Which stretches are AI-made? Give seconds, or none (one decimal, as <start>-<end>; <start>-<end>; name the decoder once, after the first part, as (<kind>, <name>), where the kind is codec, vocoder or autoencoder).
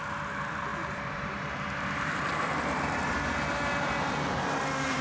0.0-5.0 (vocoder, BigVGAN v2)